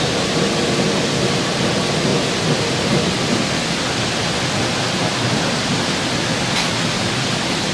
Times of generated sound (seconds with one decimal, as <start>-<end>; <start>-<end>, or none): 2.1-6.1

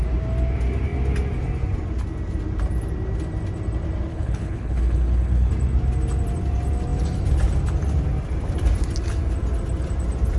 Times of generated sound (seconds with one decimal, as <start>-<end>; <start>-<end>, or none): 4.1-5.5

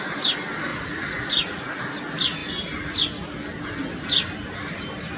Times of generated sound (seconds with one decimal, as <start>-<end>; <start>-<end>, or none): 0.7-1.8

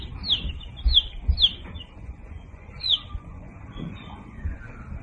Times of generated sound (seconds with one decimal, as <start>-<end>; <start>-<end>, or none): 1.6-4.6

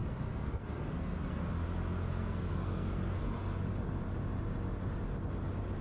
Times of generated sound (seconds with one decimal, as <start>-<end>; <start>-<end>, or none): 0.0-3.4